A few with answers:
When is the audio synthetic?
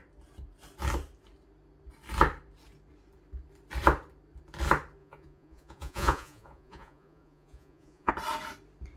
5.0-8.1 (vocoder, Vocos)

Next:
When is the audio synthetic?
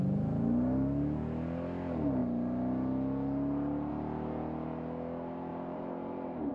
5.5-6.5 (vocoder, BigVGAN v2)